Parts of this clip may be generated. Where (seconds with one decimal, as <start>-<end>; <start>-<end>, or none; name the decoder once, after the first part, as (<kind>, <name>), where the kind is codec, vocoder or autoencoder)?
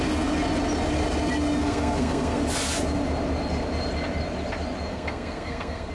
1.6-2.4 (codec, SNAC); 4.9-5.9